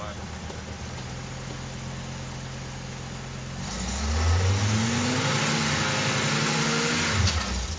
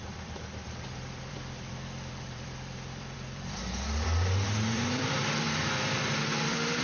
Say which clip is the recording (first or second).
first